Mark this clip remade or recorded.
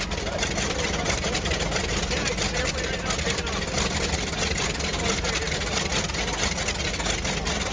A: recorded